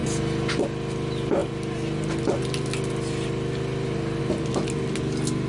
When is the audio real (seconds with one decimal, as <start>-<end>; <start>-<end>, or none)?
0.0-5.5